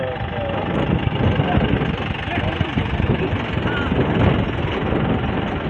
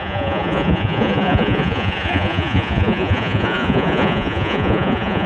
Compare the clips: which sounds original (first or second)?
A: first